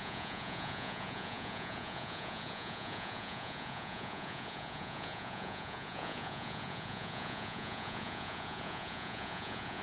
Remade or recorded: remade